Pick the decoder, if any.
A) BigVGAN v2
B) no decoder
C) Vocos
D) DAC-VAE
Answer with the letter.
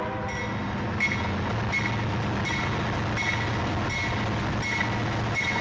B